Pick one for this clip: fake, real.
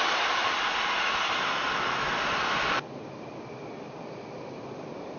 real